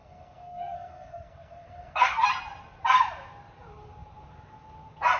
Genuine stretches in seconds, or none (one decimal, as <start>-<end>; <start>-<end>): 2.2-5.2